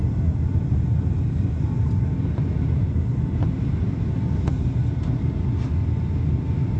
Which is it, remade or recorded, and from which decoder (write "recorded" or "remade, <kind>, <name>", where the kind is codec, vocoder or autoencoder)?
recorded